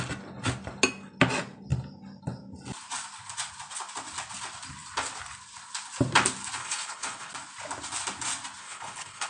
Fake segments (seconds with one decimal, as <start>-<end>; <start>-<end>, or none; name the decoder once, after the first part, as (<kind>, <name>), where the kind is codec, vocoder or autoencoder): 6.6-7.3 (codec, HILCodec); 8.6-9.3